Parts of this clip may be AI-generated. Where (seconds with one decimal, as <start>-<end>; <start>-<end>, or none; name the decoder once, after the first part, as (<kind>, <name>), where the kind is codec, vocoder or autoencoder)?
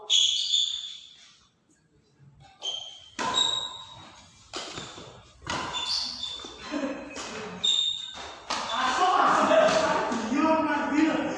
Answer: none